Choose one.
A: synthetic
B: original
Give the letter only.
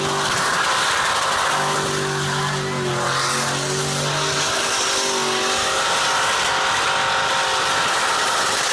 B